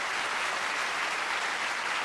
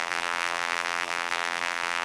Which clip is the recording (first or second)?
first